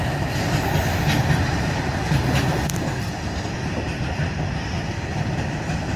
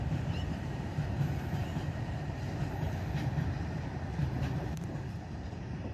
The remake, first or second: second